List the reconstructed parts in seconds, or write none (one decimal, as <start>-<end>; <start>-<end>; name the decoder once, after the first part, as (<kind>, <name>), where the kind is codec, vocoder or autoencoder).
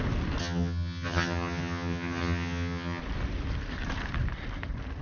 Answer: 0.4-3.0 (vocoder, HiFi-GAN)